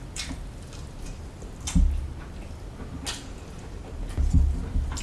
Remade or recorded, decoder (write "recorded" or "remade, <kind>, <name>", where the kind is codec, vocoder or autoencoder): recorded